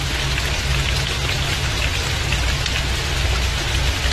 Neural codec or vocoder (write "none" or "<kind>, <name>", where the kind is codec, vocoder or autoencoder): none